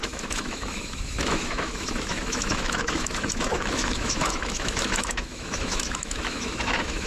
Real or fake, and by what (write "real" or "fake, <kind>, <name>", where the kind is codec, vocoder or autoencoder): fake, autoencoder, DAC-VAE